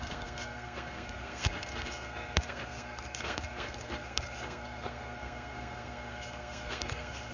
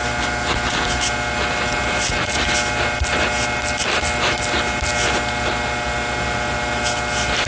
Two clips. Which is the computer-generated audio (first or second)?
first